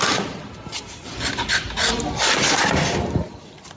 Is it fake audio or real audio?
fake